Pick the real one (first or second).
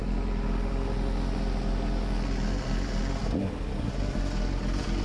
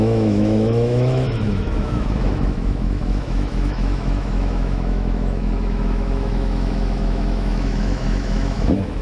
first